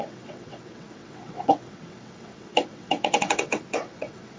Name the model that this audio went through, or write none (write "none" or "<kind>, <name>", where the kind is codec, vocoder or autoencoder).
vocoder, WaveNeXt